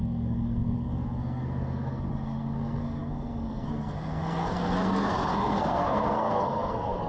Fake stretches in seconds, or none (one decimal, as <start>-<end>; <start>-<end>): 0.0-7.1